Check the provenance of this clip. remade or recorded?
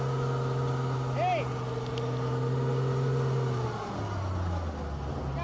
recorded